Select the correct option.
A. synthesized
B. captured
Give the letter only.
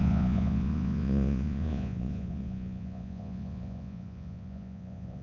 A